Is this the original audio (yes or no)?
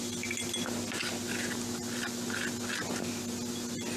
yes